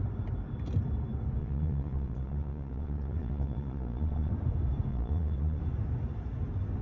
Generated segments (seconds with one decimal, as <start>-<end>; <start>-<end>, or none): 1.4-4.3; 4.9-5.6